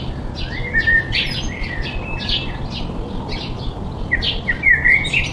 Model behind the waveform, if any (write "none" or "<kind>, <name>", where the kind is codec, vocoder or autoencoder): none